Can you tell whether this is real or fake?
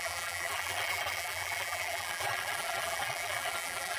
fake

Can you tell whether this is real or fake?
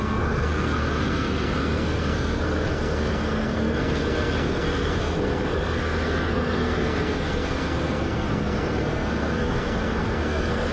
fake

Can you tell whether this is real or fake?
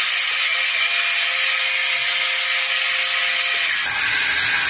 real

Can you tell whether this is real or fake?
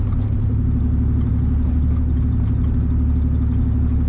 real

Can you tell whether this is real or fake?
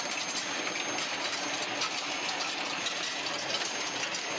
real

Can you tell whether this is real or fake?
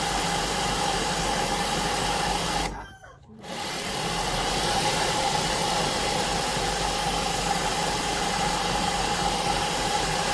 fake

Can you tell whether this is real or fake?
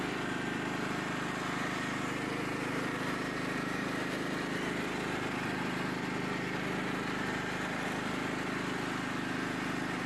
real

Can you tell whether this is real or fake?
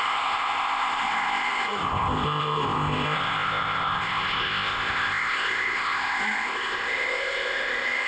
fake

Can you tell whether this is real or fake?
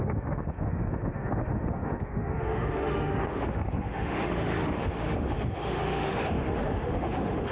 fake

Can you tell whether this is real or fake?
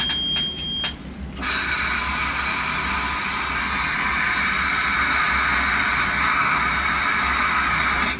real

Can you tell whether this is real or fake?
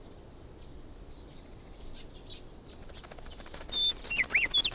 real